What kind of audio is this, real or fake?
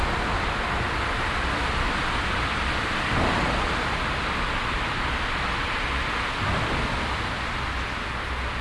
real